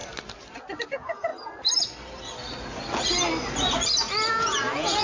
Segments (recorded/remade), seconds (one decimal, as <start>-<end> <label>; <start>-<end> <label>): 0.0-0.8 recorded; 0.8-1.3 remade; 1.3-4.3 recorded; 4.3-5.0 remade